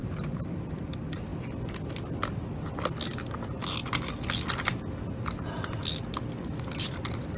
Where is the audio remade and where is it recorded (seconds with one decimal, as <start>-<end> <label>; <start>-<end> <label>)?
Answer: 0.0-7.4 recorded